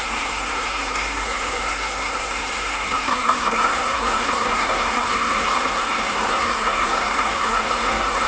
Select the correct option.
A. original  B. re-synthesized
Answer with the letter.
B